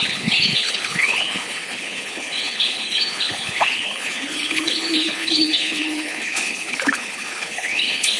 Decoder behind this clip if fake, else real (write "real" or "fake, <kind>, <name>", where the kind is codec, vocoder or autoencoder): fake, codec, HILCodec